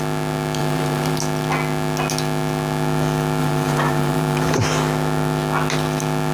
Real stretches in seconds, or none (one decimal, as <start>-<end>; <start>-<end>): 0.0-0.6; 1.2-3.4; 4.6-6.3